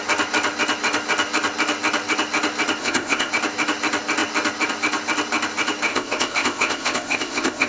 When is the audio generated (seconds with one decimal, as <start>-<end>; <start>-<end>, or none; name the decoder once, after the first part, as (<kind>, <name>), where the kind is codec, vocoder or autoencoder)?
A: 2.8-3.3 (codec, ZipCodec); 5.9-7.7